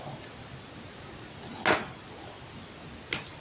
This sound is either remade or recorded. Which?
recorded